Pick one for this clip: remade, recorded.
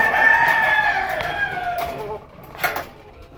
recorded